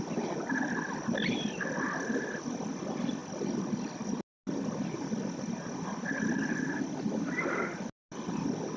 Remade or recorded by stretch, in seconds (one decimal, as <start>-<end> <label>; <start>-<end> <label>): 0.0-8.8 recorded